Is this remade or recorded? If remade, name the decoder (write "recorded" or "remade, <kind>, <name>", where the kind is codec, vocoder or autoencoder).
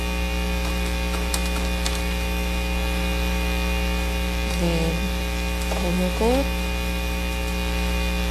remade, autoencoder, DAC-VAE